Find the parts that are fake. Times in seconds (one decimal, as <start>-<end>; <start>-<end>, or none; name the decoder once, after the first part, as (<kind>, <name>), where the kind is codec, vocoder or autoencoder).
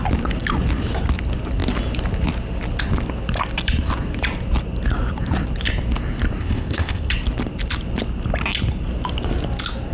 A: 6.4-7.1 (codec, ZipCodec)